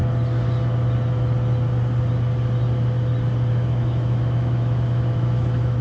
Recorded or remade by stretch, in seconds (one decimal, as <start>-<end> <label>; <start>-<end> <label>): 0.0-3.5 recorded; 3.5-5.8 remade